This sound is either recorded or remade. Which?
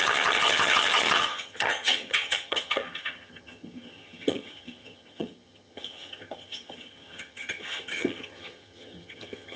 remade